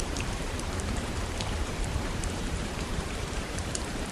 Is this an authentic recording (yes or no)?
no